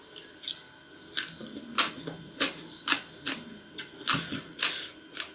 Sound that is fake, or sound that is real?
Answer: real